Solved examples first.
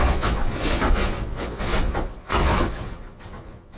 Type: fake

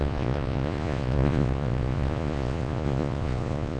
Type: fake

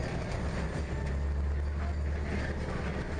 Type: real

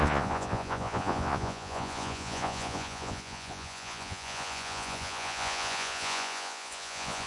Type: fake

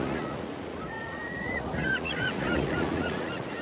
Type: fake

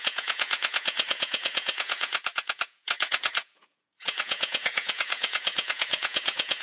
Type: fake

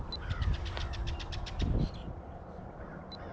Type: real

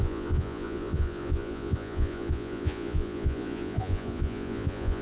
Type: fake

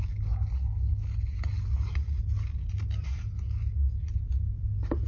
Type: real